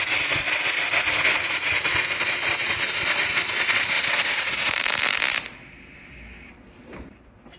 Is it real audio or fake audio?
real